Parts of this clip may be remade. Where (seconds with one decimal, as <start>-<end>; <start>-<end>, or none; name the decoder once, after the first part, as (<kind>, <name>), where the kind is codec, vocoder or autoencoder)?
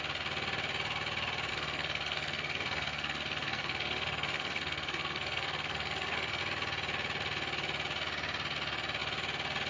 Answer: 1.5-6.4 (codec, SNAC)